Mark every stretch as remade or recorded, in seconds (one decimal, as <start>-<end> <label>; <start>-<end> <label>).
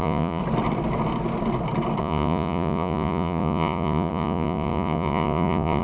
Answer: 0.0-0.4 remade; 0.4-2.0 recorded; 2.0-5.8 remade